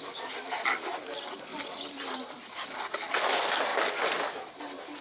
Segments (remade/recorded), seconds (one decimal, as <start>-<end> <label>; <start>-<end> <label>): 0.0-1.5 recorded; 1.5-3.1 remade; 3.1-3.7 recorded; 3.7-4.6 remade; 4.6-5.0 recorded